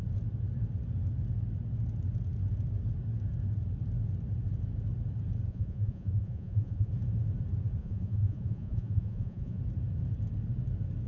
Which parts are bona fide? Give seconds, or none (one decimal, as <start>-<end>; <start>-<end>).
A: 0.0-5.5; 6.9-7.8; 9.6-11.1